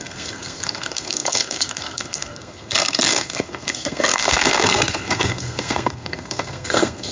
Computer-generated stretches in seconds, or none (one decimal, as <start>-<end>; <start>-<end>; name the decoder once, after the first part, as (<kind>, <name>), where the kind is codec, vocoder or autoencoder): 0.0-7.1 (codec, SNAC)